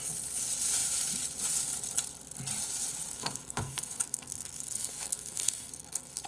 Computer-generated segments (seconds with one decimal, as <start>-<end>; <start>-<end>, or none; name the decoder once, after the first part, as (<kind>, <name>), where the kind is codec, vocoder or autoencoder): 3.1-6.3 (codec, SNAC)